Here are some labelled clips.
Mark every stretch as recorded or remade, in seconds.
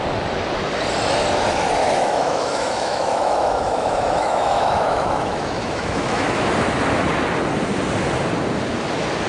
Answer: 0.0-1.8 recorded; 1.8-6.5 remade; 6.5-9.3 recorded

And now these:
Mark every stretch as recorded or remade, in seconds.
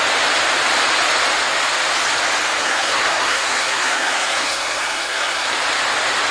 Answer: 0.0-2.6 recorded; 2.6-5.5 remade; 5.5-6.3 recorded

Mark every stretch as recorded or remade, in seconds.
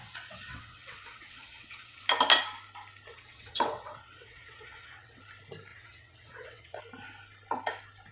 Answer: 0.0-2.0 remade; 2.0-3.1 recorded; 3.1-5.2 remade; 5.2-5.7 recorded; 5.7-6.8 remade; 6.8-8.1 recorded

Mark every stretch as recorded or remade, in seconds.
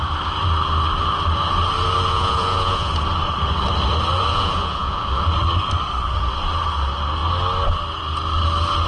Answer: 0.0-2.1 recorded; 2.1-2.9 remade; 2.9-4.3 recorded; 4.3-5.1 remade; 5.1-8.9 recorded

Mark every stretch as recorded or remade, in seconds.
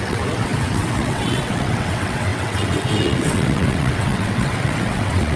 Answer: 0.0-5.4 remade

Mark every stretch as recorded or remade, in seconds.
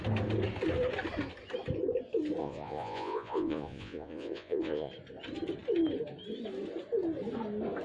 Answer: 0.0-2.4 recorded; 2.4-4.9 remade; 4.9-7.8 recorded